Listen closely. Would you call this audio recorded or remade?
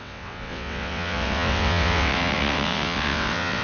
remade